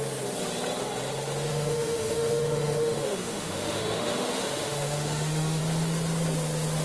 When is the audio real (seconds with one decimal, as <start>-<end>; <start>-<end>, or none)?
0.0-1.5; 5.6-6.8